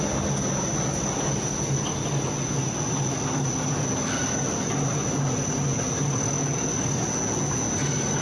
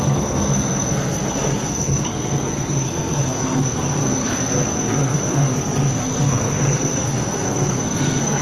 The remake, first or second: second